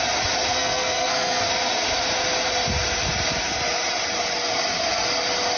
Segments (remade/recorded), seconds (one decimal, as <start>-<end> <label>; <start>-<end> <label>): 0.0-0.5 recorded; 0.5-1.4 remade; 1.4-5.6 recorded